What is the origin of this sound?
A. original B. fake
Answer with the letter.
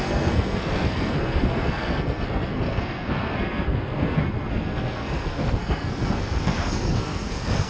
B